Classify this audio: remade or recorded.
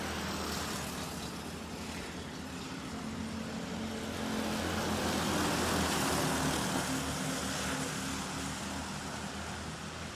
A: recorded